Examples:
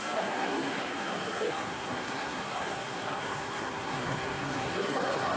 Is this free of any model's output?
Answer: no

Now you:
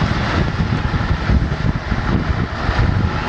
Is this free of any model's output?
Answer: yes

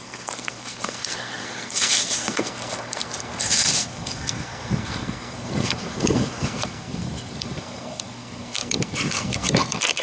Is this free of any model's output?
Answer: no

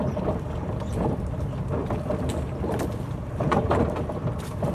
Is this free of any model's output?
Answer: yes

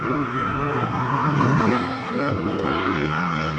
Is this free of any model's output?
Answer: no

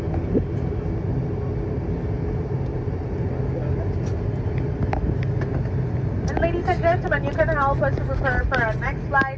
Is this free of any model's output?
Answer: yes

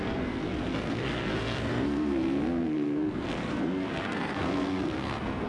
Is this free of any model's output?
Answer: no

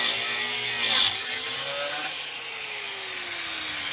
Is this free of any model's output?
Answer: yes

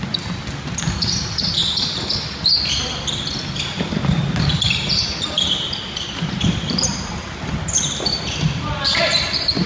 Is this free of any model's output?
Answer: yes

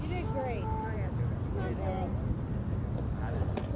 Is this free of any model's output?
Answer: yes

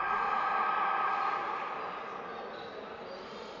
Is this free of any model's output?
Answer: yes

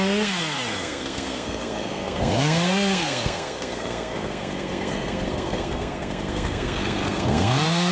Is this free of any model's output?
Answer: no